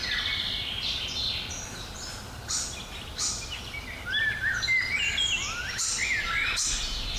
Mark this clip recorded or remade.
recorded